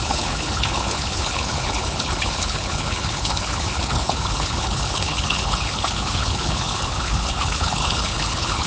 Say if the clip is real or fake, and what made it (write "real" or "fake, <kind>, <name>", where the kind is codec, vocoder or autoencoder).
fake, codec, HILCodec